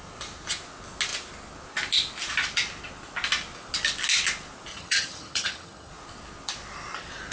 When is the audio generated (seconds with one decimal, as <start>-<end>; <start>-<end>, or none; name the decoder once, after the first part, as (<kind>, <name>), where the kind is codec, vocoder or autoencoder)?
4.7-5.9 (vocoder, HiFi-GAN)